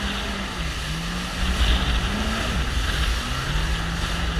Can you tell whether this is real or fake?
real